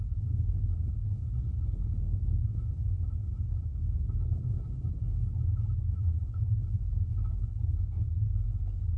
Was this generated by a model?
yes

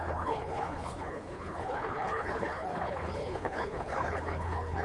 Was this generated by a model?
yes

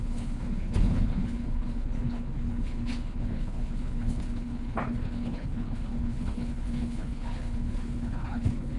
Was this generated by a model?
yes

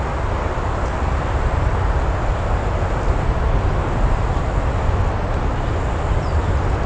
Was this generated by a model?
no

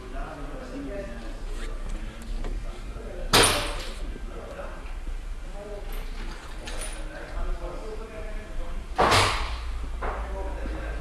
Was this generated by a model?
no